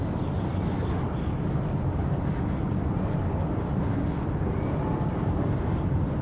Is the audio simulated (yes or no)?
no